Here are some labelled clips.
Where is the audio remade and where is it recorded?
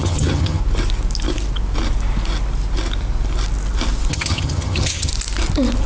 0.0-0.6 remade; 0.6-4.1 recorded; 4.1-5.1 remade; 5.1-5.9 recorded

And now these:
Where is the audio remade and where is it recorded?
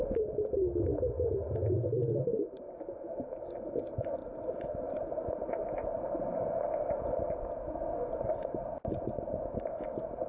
0.0-4.2 recorded; 4.2-4.7 remade; 4.7-10.3 recorded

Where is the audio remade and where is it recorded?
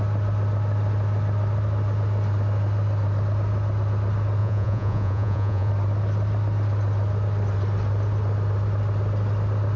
0.0-4.4 recorded; 4.4-5.7 remade; 5.7-9.8 recorded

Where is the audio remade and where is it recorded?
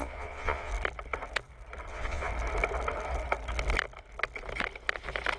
0.0-0.7 remade; 0.7-1.9 recorded; 1.9-2.3 remade; 2.3-5.4 recorded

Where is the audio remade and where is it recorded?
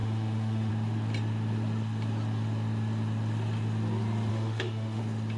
0.0-0.7 remade; 0.7-4.3 recorded; 4.3-5.0 remade; 5.0-5.4 recorded